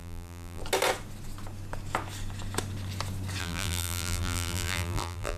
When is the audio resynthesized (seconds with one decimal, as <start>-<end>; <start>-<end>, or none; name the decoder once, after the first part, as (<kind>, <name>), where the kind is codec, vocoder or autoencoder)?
0.0-0.6 (vocoder, BigVGAN v2); 3.4-5.4